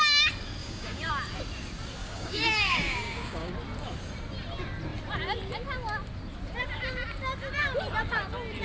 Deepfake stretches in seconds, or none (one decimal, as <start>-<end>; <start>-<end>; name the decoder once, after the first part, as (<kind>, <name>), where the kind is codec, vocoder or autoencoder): 0.6-1.1 (codec, DAC); 2.0-3.5

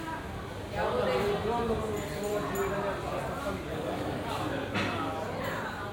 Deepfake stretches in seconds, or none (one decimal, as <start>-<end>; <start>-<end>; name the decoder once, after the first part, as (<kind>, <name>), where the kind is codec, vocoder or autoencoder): 3.7-4.3 (codec, DAC)

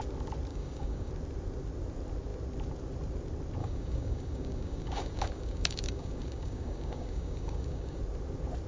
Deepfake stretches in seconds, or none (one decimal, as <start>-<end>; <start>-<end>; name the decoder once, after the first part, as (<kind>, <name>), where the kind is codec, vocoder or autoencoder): 0.5-1.1 (codec, DAC); 3.6-8.0

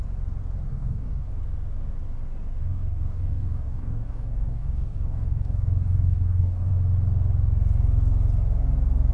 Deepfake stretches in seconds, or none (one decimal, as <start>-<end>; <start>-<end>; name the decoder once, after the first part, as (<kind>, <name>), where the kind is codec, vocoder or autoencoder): 0.7-1.3 (codec, DAC); 2.5-6.7

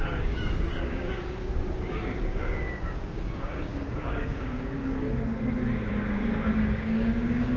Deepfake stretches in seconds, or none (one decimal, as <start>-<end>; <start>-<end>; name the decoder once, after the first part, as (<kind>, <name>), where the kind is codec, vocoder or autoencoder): 0.0-5.3 (codec, DAC); 5.9-7.6